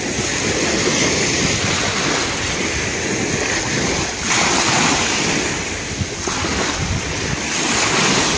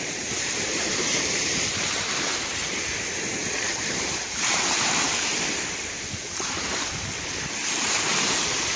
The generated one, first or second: second